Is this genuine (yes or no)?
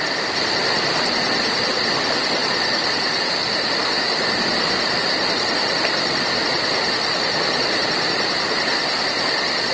yes